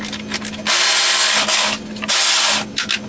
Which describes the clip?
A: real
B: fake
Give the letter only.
A